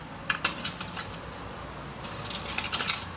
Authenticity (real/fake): real